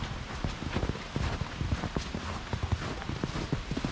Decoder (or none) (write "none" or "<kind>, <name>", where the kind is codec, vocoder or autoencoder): none